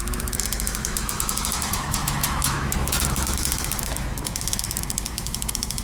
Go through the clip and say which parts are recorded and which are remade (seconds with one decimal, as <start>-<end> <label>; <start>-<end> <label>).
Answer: 0.0-5.8 remade